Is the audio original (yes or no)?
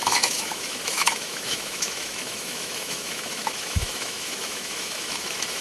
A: no